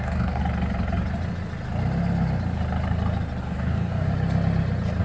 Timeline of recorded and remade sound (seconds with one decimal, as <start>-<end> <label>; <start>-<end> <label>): 0.0-0.4 remade; 0.4-3.4 recorded; 3.4-4.1 remade; 4.1-5.0 recorded